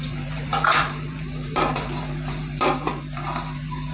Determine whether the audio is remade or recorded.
remade